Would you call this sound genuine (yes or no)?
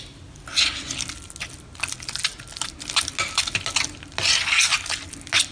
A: yes